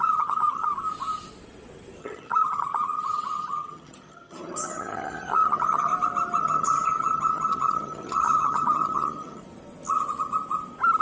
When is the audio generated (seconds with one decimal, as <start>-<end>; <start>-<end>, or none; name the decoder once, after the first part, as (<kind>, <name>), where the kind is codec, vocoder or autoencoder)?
0.0-0.7 (vocoder, HiFi-GAN); 2.0-5.9; 6.4-9.4